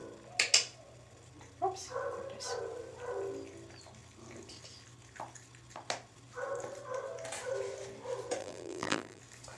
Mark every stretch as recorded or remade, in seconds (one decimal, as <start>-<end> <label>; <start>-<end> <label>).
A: 0.0-8.4 recorded; 8.4-9.2 remade; 9.2-9.6 recorded